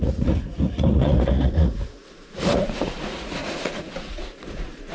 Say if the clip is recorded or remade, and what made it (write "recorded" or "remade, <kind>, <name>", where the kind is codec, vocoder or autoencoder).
remade, vocoder, Vocos